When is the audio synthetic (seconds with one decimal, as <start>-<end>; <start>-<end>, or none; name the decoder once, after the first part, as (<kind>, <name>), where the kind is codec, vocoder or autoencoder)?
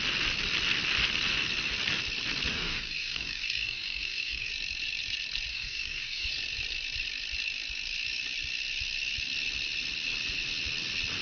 2.5-4.5 (codec, DAC); 5.5-6.3